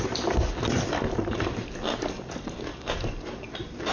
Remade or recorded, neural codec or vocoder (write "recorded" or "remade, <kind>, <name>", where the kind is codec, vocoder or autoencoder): recorded